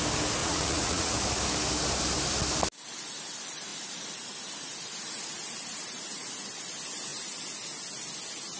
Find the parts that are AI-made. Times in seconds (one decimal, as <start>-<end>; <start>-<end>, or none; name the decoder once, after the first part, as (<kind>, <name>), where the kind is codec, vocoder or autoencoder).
0.4-1.1 (vocoder, Vocos)